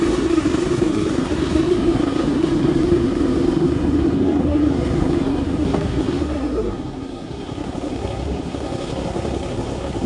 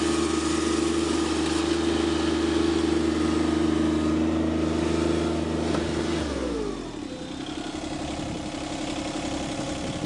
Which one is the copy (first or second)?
first